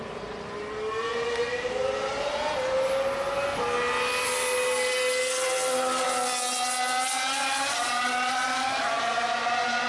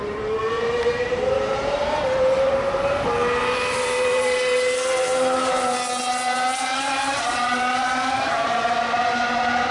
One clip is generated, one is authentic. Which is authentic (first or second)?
first